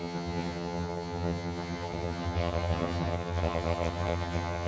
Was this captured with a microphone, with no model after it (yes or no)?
no